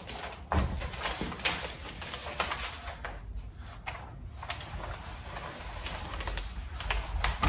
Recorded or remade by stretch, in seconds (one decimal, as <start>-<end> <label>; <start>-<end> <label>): 0.0-7.5 recorded